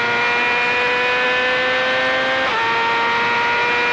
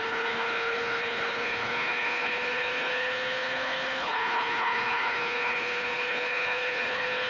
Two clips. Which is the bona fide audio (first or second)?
first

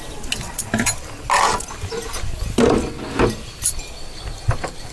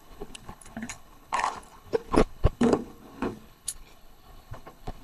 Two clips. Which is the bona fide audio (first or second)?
first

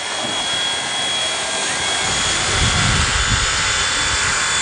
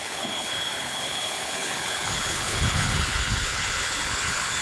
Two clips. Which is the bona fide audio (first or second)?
first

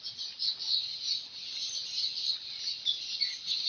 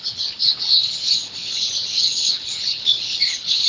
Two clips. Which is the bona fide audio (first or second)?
first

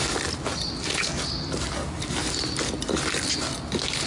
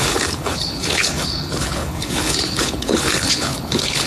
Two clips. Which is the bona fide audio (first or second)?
first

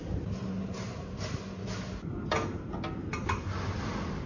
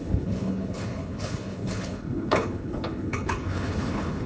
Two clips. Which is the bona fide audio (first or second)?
first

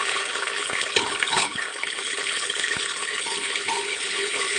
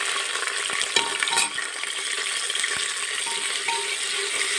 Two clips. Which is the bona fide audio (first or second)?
second